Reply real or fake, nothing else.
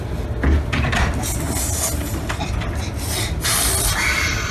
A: real